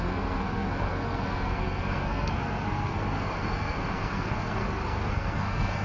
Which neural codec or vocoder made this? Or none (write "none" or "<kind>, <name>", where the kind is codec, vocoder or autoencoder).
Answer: codec, SNAC